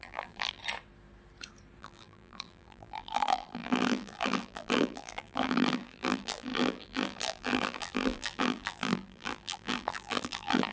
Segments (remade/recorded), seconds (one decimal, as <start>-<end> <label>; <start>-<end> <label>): 0.0-0.6 remade; 0.6-1.8 recorded; 1.8-10.7 remade